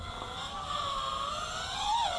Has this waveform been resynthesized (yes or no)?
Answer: no